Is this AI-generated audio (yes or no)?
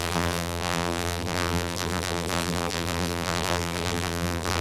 yes